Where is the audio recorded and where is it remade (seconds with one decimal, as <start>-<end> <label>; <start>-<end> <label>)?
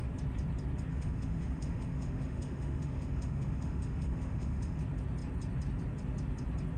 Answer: 0.0-0.9 recorded; 0.9-4.8 remade; 4.8-6.8 recorded